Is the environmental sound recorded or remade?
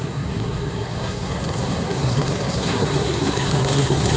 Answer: remade